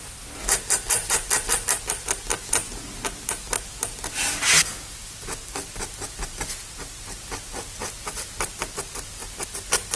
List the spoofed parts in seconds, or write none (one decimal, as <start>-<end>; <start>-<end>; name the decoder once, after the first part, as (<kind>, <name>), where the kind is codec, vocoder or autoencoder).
none